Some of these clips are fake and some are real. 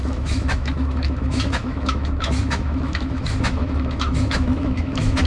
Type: fake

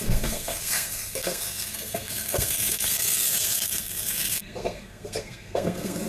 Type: fake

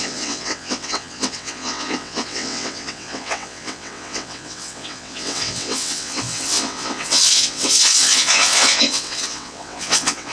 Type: fake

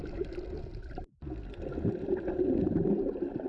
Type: real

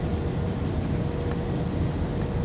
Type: real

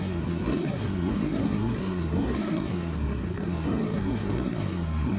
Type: fake